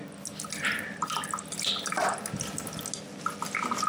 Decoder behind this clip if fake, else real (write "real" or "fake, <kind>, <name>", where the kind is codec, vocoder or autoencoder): real